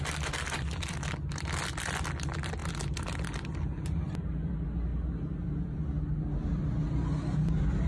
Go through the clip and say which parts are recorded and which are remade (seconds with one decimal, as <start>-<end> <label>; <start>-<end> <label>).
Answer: 0.0-7.9 recorded